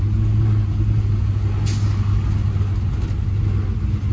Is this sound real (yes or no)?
yes